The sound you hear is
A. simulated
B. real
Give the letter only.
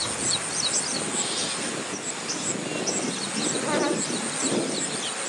B